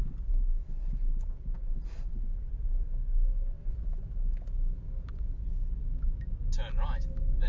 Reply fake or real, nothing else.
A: real